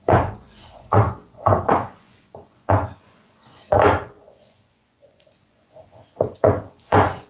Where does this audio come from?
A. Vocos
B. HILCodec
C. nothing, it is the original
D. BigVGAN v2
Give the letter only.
A